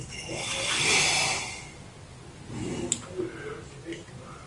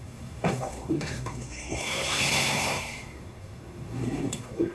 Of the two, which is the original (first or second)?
first